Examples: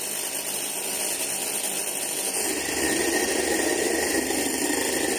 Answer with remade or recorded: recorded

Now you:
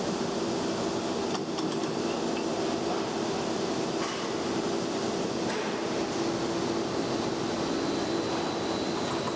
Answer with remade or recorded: recorded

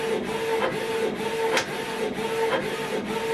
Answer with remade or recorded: recorded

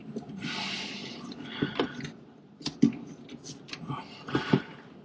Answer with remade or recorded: remade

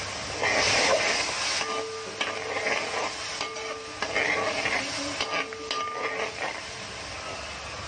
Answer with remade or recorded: recorded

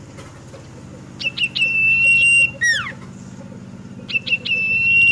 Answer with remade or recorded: recorded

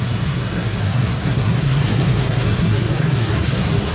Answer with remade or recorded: remade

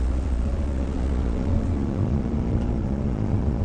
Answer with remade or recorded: remade